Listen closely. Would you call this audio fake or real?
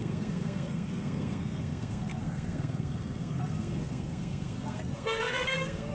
fake